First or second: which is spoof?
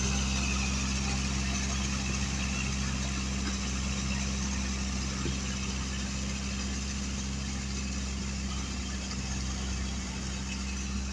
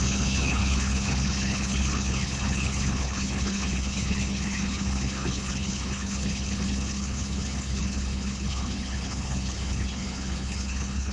second